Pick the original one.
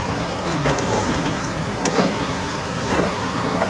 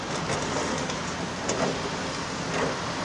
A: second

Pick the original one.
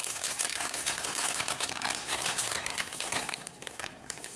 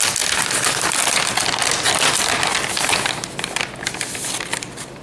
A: second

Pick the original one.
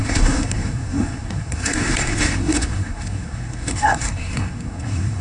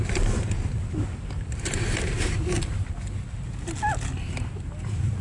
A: second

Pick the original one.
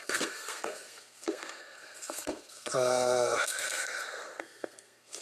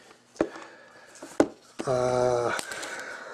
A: second